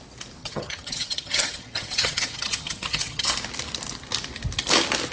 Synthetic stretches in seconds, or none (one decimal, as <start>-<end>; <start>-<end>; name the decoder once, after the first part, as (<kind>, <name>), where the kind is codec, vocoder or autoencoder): 0.4-3.3 (vocoder, HiFi-GAN)